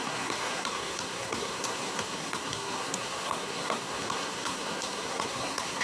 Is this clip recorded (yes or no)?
no